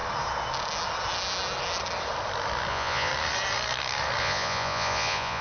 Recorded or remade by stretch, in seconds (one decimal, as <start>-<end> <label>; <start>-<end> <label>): 0.0-2.7 recorded; 2.7-3.1 remade; 3.1-4.2 recorded; 4.2-5.4 remade